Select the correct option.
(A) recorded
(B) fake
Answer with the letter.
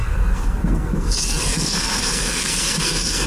B